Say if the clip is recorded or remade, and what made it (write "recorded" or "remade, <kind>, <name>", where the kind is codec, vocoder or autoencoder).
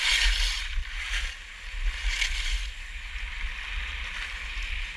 recorded